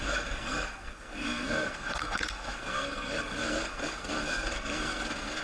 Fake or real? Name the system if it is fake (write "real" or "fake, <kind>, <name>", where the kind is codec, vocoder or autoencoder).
fake, codec, SNAC